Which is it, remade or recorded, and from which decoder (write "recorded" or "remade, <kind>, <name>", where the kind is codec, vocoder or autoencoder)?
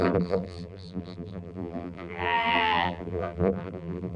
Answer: remade, vocoder, BigVGAN v2